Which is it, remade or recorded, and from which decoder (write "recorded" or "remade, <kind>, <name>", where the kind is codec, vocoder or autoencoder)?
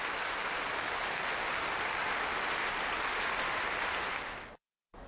recorded